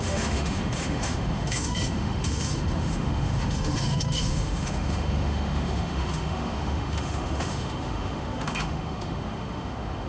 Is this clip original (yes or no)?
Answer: no